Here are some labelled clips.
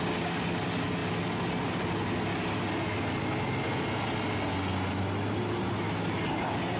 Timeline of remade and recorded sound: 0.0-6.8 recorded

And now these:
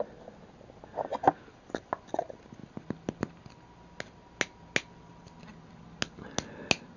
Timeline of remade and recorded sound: 0.0-7.0 recorded

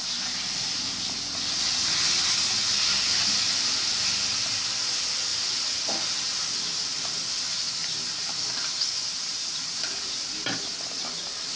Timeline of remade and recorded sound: 0.0-11.6 recorded

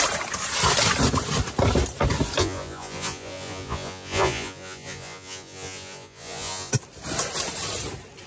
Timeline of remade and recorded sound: 0.0-2.4 recorded; 2.4-6.7 remade; 6.7-8.3 recorded